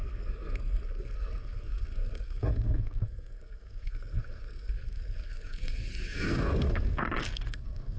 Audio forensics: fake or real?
fake